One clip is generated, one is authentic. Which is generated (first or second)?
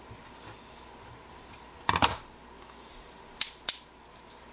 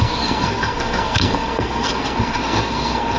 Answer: second